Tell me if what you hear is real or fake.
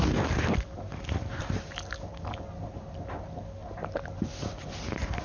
real